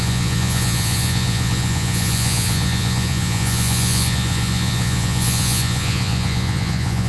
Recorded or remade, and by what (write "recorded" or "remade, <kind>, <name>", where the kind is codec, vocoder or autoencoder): remade, vocoder, Vocos